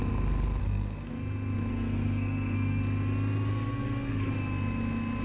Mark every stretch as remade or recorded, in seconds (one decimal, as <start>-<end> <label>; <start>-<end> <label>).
0.0-0.6 recorded; 0.6-1.1 remade; 1.1-1.7 recorded; 1.7-2.8 remade; 2.8-3.5 recorded; 3.5-4.3 remade; 4.3-5.2 recorded

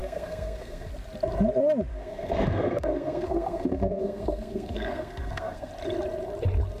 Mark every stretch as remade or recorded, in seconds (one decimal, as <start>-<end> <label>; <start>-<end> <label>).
0.0-0.9 remade; 0.9-1.9 recorded; 1.9-5.7 remade; 5.7-6.8 recorded

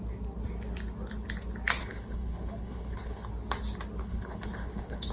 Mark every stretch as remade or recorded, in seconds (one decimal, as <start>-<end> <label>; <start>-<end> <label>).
0.0-1.8 recorded; 1.8-3.3 remade; 3.3-4.0 recorded; 4.0-5.1 remade